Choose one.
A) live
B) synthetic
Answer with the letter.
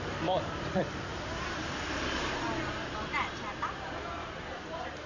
B